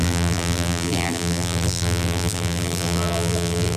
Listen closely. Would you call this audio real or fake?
fake